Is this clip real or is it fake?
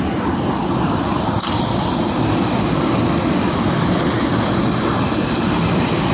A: real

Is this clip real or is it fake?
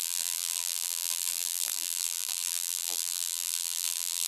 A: fake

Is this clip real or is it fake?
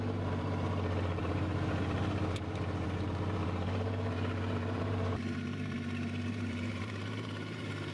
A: fake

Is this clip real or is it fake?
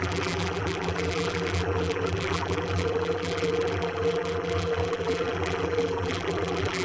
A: fake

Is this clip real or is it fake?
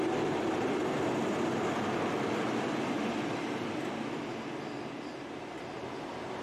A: real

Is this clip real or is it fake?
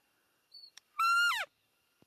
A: fake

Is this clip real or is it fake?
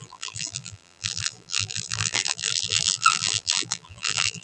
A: fake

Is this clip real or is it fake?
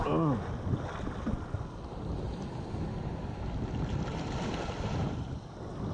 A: real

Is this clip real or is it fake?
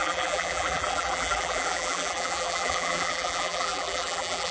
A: fake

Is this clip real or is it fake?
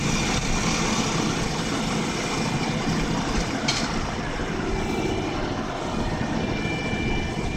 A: real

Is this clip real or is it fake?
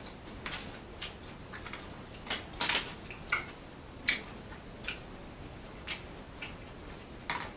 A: real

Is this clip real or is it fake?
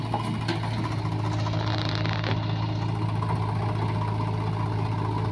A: real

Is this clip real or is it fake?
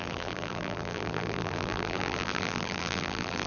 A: fake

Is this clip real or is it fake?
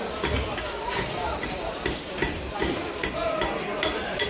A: fake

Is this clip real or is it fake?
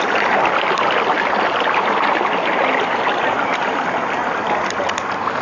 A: real